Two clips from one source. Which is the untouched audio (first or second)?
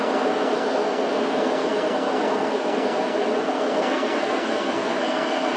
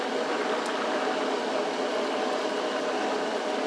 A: second